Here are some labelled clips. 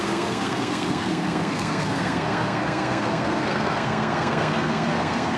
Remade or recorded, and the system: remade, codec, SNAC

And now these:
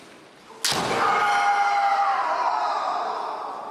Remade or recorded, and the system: recorded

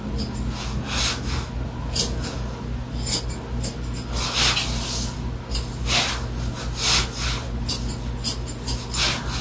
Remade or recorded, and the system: recorded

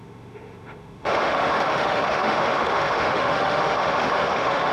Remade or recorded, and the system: remade, autoencoder, DAC-VAE